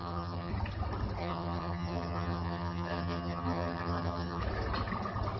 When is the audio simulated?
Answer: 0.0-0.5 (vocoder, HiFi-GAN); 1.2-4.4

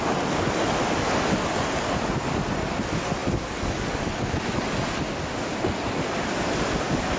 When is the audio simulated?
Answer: none

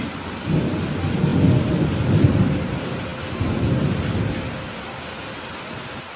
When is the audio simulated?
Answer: none